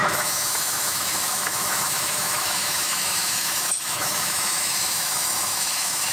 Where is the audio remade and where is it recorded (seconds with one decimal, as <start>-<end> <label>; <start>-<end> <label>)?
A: 0.0-6.1 remade